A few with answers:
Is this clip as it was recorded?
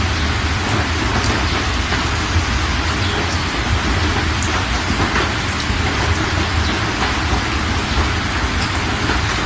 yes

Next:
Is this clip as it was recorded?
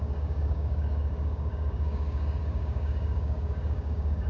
no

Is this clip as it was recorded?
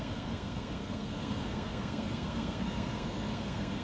no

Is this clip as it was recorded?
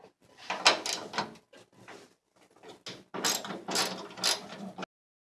yes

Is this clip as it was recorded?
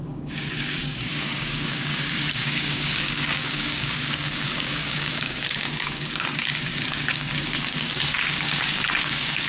no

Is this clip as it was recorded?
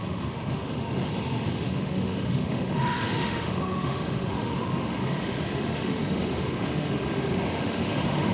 no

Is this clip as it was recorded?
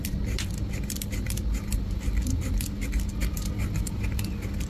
yes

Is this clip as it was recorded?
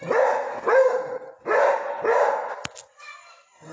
yes